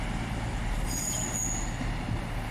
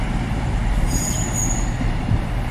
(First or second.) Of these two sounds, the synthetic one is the second